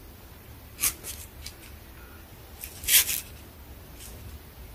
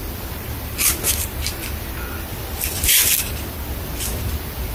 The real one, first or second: first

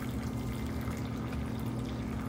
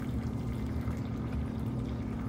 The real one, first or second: first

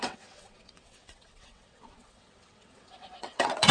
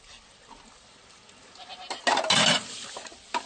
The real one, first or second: second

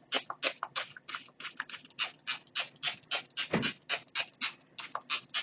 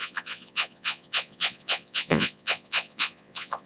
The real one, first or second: first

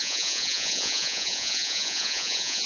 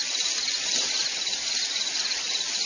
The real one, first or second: second